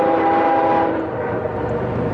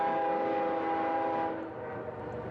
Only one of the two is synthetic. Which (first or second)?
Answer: first